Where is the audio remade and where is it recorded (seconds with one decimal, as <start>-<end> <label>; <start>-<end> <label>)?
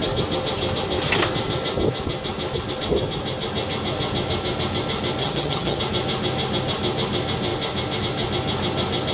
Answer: 0.0-5.2 recorded; 5.2-5.8 remade; 5.8-9.1 recorded